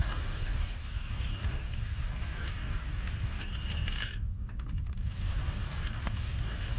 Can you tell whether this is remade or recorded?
remade